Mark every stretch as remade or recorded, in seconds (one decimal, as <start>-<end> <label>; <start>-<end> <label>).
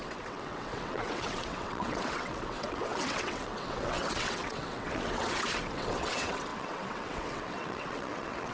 0.0-8.5 remade